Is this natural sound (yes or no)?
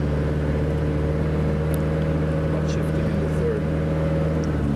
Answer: yes